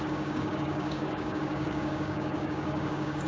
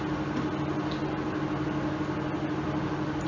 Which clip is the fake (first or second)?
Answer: first